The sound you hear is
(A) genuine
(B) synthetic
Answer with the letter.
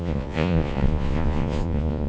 B